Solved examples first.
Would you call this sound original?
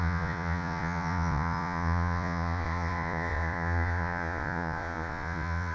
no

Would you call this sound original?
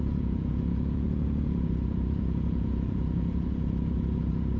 no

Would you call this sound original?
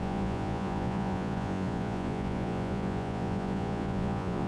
no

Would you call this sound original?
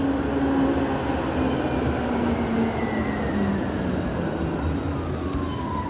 yes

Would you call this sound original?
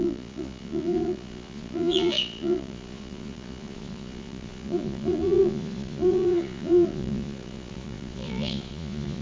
no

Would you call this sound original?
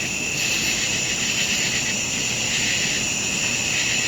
yes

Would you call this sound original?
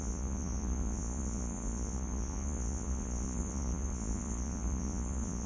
no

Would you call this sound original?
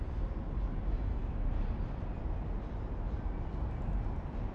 yes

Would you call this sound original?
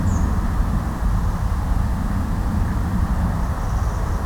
yes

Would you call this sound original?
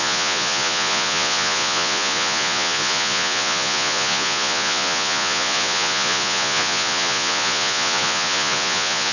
no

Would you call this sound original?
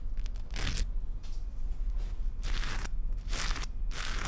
yes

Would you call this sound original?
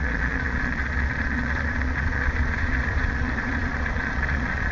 no